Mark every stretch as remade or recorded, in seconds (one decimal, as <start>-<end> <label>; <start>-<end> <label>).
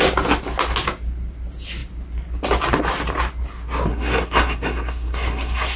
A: 0.0-3.9 recorded; 3.9-5.8 remade